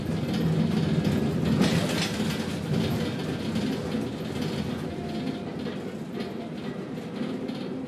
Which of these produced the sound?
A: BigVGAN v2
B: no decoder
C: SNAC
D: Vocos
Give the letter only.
B